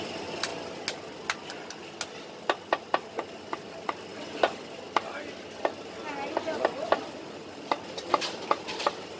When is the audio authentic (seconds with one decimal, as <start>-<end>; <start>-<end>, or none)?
0.0-9.2